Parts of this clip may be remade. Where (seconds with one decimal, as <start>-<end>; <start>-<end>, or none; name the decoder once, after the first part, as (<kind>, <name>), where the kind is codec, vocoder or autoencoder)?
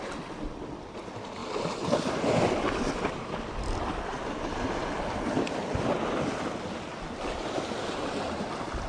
4.8-8.9 (vocoder, BigVGAN v2)